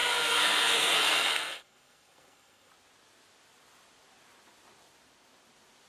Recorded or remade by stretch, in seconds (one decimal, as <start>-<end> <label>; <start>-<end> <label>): 0.0-2.7 remade; 2.7-5.9 recorded

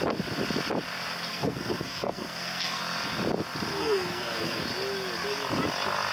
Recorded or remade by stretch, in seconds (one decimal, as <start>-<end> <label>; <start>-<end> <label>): 0.0-1.3 recorded; 1.3-2.8 remade; 2.8-3.7 recorded; 3.7-4.6 remade; 4.6-6.1 recorded

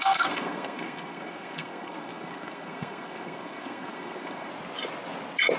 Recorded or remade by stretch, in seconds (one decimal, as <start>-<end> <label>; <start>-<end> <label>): 0.0-4.5 remade; 4.5-5.6 recorded

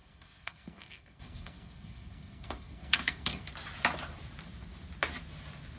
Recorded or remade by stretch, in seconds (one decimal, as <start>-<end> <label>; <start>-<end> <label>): 0.0-3.5 remade; 3.5-5.8 recorded